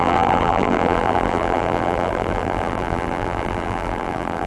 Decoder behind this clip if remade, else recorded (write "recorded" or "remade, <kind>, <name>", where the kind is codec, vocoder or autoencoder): remade, vocoder, BigVGAN v2